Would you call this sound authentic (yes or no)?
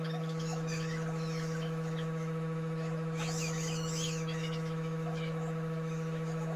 no